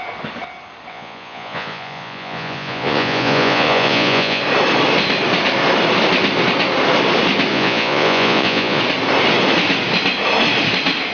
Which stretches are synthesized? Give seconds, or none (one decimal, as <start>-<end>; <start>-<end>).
0.9-4.4; 7.5-8.8